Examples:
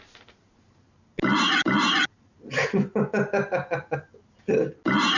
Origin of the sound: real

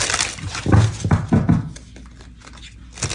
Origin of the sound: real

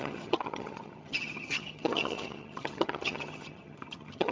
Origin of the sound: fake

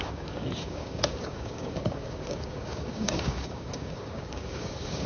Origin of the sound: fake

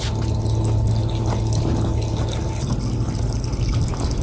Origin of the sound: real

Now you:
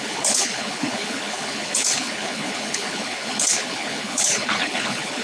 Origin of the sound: fake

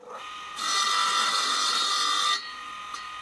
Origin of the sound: real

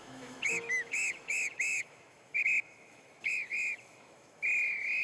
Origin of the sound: fake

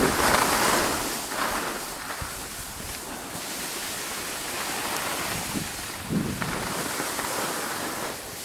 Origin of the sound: real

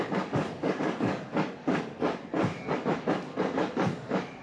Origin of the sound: fake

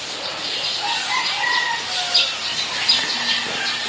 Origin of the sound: real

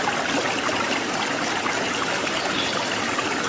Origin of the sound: real